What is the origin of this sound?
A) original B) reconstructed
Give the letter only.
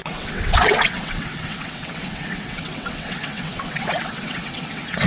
B